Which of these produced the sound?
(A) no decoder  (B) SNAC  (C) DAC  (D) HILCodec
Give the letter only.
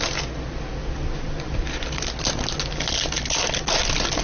A